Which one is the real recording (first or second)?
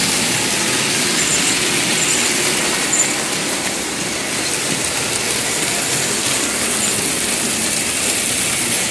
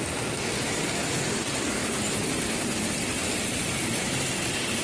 first